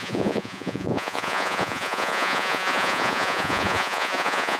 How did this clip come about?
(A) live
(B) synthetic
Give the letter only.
B